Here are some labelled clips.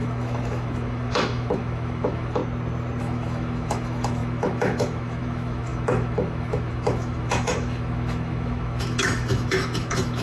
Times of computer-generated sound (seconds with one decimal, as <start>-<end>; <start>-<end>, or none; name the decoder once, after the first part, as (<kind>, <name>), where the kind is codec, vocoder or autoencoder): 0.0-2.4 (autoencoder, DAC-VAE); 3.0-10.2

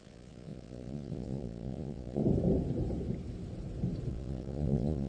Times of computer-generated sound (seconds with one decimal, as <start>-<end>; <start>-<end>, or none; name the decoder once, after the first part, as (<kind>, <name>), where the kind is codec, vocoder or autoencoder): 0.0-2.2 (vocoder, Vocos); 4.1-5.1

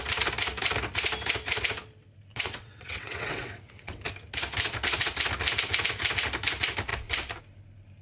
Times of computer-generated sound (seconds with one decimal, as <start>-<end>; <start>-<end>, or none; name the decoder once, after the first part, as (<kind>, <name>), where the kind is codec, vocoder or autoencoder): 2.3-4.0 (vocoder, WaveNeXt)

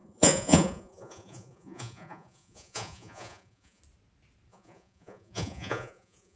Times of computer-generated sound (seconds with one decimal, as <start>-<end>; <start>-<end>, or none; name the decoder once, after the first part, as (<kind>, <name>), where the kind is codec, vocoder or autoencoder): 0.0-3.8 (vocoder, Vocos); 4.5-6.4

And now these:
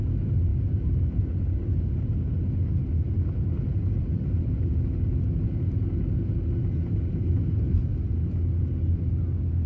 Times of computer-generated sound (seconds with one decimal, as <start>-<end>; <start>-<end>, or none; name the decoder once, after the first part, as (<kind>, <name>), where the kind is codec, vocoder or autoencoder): none

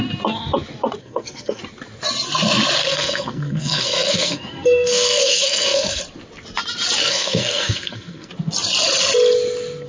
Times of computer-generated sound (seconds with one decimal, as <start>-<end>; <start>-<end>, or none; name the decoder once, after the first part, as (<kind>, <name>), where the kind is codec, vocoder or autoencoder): 1.0-1.6 (codec, SNAC); 2.8-6.0; 7.0-8.3